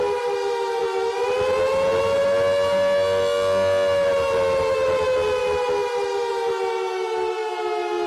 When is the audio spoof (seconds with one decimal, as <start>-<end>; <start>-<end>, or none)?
none